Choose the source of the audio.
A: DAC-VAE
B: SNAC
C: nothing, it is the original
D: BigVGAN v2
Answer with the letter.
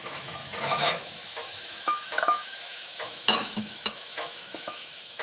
A